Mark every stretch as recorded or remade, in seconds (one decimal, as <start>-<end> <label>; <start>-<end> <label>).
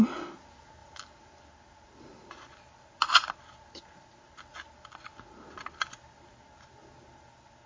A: 0.0-7.7 recorded